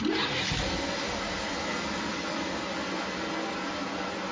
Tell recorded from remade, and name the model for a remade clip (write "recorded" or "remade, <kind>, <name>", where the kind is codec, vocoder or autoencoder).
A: recorded